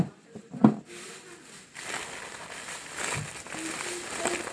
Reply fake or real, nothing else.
real